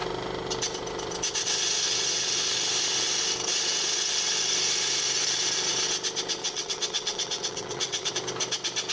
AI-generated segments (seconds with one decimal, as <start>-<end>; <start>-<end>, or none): 6.4-8.1